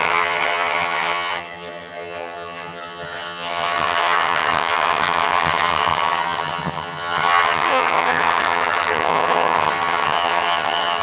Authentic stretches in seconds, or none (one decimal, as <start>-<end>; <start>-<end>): none